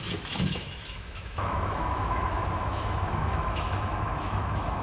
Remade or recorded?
remade